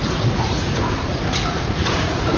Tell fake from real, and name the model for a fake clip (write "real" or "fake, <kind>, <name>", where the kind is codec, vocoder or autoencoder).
fake, vocoder, Vocos